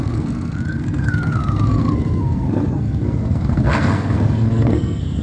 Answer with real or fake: fake